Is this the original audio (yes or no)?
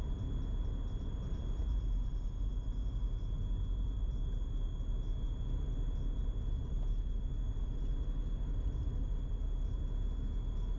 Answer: yes